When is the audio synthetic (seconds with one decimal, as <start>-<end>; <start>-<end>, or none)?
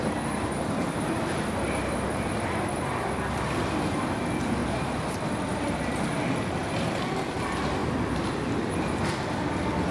4.6-5.9